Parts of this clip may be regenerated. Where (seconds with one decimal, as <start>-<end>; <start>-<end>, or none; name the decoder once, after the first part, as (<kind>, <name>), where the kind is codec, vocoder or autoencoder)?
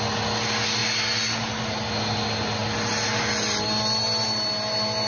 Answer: none